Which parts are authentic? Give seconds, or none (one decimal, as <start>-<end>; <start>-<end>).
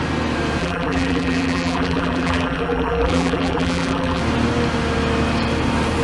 0.0-0.6; 4.2-6.0